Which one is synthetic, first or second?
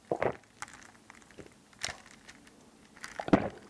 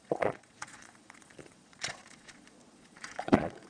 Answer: second